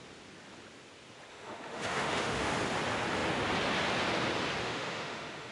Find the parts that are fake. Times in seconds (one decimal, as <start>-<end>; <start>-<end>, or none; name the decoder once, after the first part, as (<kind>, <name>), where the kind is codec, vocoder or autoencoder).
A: 1.3-2.5 (autoencoder, DAC-VAE); 4.6-5.5